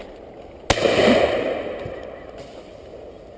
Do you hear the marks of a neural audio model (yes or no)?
no